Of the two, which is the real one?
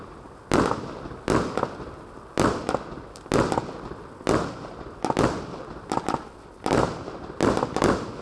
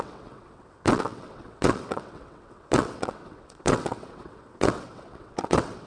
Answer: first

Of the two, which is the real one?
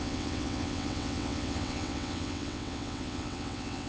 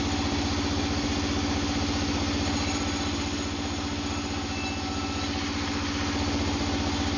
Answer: second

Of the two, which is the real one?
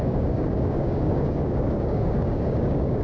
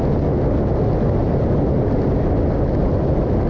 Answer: second